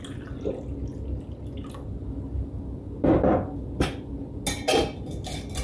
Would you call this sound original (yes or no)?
yes